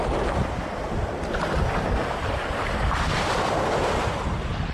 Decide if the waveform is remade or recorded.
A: recorded